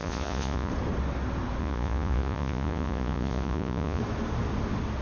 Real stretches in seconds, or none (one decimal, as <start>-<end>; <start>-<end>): 0.7-1.6; 4.0-5.0